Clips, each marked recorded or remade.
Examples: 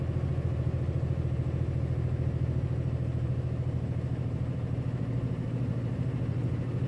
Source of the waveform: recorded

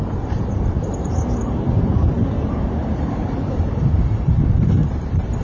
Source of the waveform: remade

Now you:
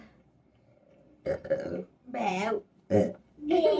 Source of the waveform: remade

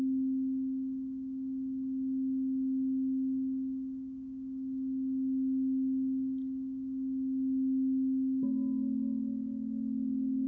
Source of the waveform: recorded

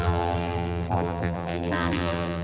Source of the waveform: remade